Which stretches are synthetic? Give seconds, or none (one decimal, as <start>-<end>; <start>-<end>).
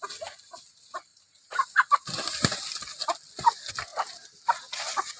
1.1-2.6